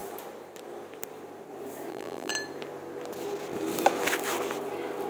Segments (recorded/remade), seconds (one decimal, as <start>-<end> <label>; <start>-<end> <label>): 0.0-1.9 recorded; 1.9-2.3 remade; 2.3-5.1 recorded